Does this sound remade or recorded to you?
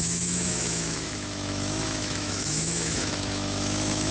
remade